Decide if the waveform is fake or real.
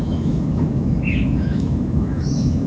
fake